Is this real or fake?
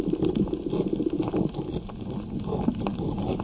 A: real